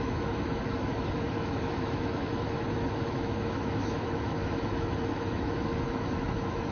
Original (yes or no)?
no